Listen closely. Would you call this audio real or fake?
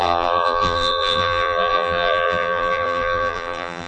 fake